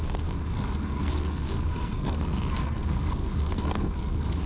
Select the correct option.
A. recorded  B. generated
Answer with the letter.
B